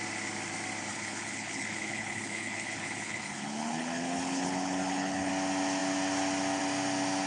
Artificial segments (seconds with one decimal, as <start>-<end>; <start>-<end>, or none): 0.9-5.3